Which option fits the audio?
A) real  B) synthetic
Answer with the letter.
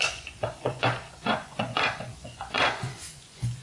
B